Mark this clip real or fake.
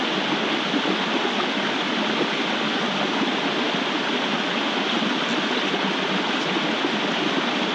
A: real